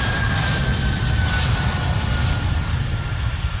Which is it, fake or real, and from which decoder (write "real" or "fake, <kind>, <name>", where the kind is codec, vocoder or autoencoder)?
fake, vocoder, BigVGAN v2